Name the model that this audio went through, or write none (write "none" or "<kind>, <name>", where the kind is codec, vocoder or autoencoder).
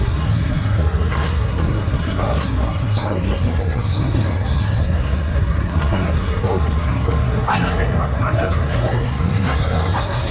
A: codec, SNAC